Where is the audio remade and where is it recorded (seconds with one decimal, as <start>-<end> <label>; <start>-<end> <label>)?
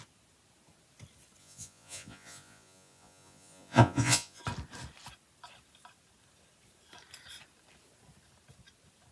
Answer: 0.0-1.4 recorded; 1.4-4.4 remade; 4.4-9.1 recorded